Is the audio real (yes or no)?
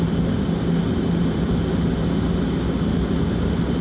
yes